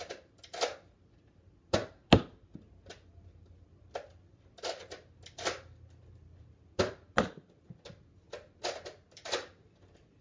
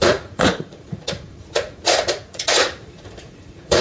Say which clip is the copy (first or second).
second